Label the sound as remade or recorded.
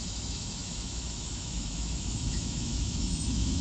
remade